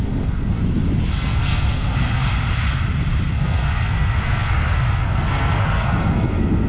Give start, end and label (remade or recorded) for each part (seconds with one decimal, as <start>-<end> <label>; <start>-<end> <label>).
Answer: 0.0-0.6 remade; 0.6-1.1 recorded; 1.1-2.2 remade; 2.2-3.3 recorded; 3.3-6.7 remade